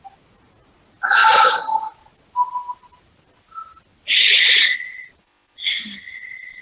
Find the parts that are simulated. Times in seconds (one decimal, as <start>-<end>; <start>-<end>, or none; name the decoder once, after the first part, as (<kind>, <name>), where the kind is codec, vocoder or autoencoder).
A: none